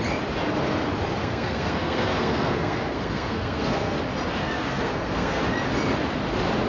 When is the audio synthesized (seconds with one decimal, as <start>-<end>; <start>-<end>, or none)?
1.2-4.0; 4.4-5.4